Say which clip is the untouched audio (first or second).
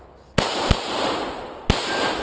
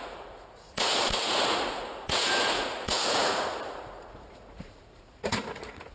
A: first